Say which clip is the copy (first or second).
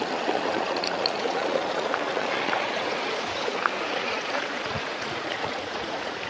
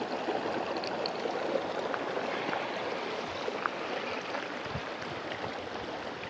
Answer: first